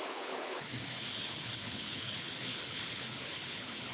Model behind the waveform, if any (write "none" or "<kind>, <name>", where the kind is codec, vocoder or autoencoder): codec, HILCodec